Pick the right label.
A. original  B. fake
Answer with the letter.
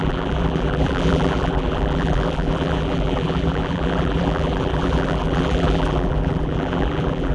B